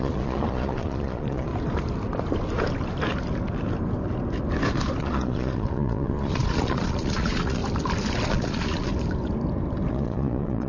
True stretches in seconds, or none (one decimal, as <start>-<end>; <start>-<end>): 1.5-5.0; 7.6-8.3; 8.9-9.9